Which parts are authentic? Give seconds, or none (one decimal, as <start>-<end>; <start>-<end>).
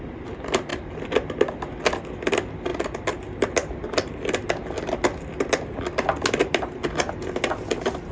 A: 0.0-8.1